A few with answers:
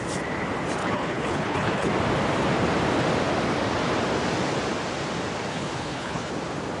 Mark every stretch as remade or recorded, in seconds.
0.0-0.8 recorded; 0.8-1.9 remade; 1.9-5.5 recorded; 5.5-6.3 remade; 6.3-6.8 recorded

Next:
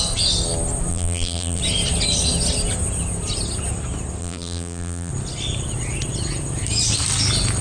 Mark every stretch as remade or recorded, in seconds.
0.0-0.9 recorded; 0.9-1.6 remade; 1.6-4.2 recorded; 4.2-5.1 remade; 5.1-7.6 recorded